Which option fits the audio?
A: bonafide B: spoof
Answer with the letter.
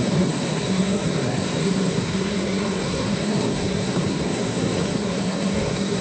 B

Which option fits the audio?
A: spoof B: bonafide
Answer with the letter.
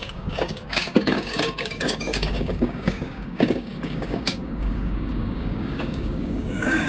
A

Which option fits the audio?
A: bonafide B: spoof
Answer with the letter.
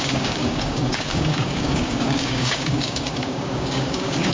B